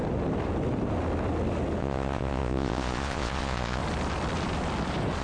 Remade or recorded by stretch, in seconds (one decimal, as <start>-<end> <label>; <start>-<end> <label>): 0.0-1.8 recorded; 1.8-3.8 remade; 3.8-5.2 recorded

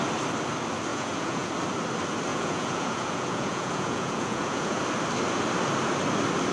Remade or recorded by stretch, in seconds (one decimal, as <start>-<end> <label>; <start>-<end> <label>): 0.0-0.9 recorded; 0.9-1.5 remade; 1.5-2.3 recorded; 2.3-4.8 remade; 4.8-6.5 recorded

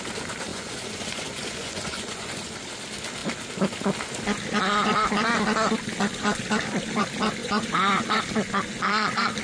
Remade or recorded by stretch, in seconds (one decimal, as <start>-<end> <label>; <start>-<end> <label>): 0.0-0.5 recorded; 0.5-2.5 remade; 2.5-7.4 recorded; 7.4-8.2 remade; 8.2-9.4 recorded

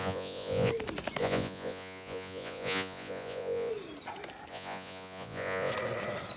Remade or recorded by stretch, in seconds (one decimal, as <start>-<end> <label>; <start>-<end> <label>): 0.0-0.7 remade; 0.7-1.2 recorded; 1.2-3.7 remade; 3.7-4.5 recorded; 4.5-5.7 remade; 5.7-6.4 recorded

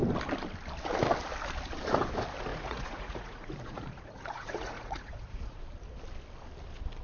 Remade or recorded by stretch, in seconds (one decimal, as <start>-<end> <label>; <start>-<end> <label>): 0.0-2.5 recorded; 2.5-5.6 remade; 5.6-7.0 recorded

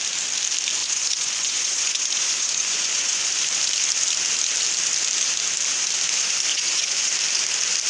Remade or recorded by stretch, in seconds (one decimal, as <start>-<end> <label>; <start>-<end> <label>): 0.0-0.8 recorded; 0.8-3.3 remade; 3.3-6.5 recorded; 6.5-7.1 remade; 7.1-7.9 recorded

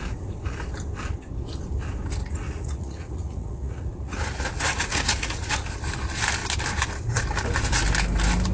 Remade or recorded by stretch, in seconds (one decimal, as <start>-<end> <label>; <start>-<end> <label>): 0.0-2.2 recorded; 2.2-5.8 remade; 5.8-8.5 recorded

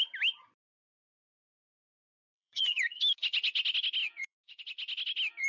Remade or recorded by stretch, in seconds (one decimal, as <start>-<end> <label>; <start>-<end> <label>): 0.0-1.9 recorded; 1.9-3.0 remade; 3.0-4.0 recorded; 4.0-4.6 remade; 4.6-5.5 recorded